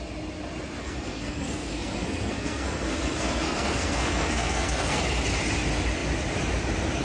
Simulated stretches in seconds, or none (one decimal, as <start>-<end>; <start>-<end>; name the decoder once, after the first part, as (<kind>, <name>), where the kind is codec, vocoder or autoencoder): 0.8-5.0 (codec, SNAC)